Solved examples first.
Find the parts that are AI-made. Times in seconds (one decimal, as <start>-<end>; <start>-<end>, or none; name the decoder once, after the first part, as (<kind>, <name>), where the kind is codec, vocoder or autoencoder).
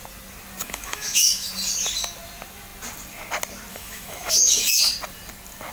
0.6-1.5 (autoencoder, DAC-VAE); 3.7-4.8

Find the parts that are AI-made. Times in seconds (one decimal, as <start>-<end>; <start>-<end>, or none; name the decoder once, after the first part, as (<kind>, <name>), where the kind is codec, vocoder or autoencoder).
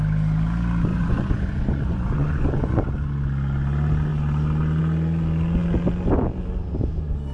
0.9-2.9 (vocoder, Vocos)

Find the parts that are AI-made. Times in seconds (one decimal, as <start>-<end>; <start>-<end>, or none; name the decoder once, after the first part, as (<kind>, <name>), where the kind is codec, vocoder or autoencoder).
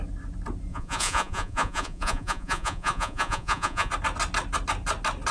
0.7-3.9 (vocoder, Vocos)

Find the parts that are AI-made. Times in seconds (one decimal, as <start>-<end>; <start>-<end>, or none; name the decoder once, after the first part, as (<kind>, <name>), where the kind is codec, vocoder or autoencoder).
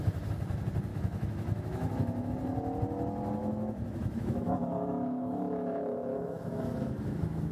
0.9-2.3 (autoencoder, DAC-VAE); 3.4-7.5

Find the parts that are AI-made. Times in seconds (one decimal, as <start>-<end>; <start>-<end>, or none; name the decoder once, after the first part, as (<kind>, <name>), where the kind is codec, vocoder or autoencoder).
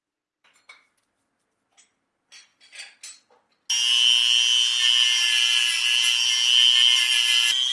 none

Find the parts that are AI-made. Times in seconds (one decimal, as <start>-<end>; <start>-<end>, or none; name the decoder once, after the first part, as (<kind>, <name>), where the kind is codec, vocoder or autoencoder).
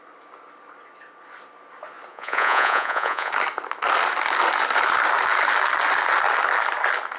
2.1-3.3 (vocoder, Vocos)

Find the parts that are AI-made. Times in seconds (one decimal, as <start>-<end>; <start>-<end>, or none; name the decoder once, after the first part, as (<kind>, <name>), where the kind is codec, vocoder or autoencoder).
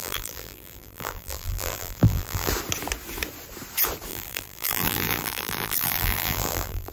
0.0-2.5 (vocoder, BigVGAN v2); 4.1-6.9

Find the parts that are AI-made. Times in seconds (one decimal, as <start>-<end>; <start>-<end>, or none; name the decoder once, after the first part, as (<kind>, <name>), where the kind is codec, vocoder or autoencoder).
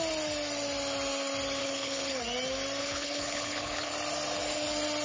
1.6-2.2 (codec, HILCodec); 2.8-3.9